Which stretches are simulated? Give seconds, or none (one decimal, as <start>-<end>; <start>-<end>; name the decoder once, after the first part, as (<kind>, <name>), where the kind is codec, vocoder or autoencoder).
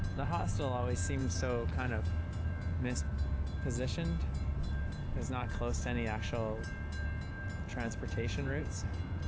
4.2-5.5 (vocoder, BigVGAN v2); 7.7-8.6